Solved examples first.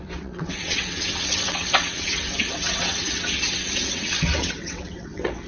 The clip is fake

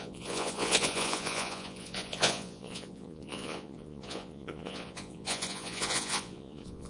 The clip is fake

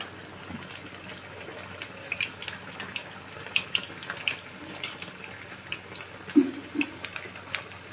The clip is real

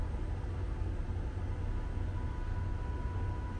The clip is real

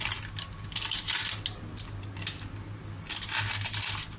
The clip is real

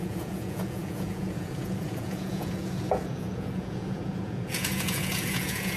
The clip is fake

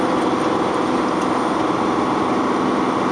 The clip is real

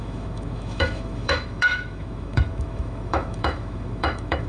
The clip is fake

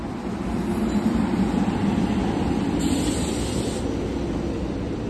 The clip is real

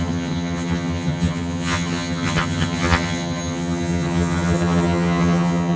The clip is fake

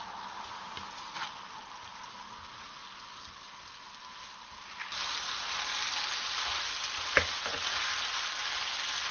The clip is real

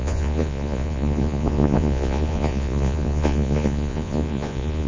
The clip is fake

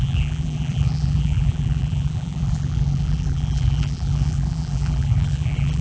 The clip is fake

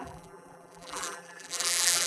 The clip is fake